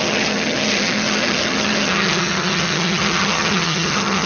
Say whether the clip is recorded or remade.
remade